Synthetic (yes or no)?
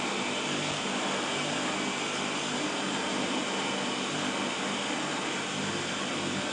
no